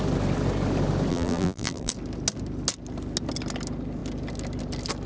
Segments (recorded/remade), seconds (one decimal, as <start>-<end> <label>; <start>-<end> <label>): 0.0-1.1 recorded; 1.1-1.9 remade; 1.9-5.1 recorded